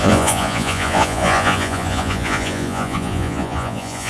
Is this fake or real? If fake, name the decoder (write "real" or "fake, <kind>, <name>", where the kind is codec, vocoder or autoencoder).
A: fake, vocoder, Vocos